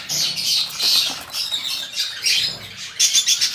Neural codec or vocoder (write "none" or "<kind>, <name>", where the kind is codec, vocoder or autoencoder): none